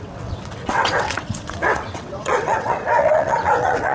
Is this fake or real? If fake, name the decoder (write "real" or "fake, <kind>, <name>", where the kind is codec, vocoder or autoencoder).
fake, vocoder, WaveNeXt